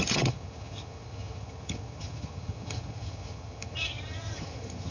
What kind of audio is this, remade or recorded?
remade